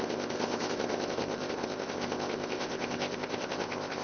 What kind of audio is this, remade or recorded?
remade